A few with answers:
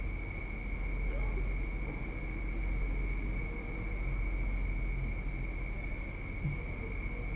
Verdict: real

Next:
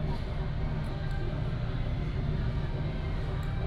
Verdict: real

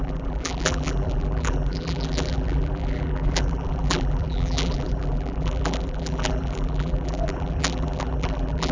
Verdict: fake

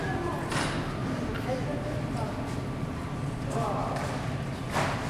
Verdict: real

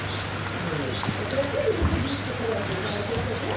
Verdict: real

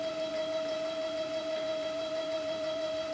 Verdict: fake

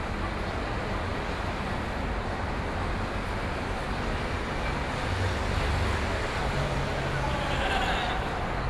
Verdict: real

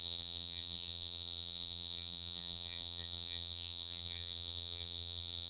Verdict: fake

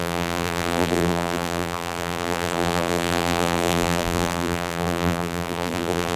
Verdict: fake